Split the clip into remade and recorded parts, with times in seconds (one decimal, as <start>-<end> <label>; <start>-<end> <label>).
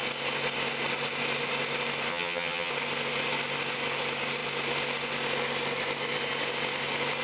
0.0-2.1 recorded; 2.1-2.7 remade; 2.7-7.2 recorded